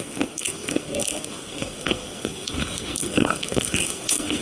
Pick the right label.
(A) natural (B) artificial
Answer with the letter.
B